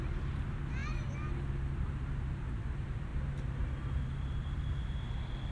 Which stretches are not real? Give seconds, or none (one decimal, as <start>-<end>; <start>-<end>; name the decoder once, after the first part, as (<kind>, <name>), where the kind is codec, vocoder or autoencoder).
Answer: 0.0-0.8 (vocoder, BigVGAN v2); 1.7-5.5